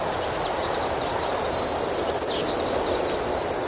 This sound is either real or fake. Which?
real